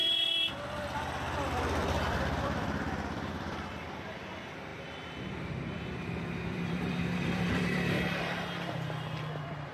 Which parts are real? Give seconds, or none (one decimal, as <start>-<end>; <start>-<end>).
0.5-1.8; 3.8-4.7